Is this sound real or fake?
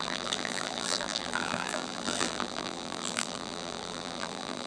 fake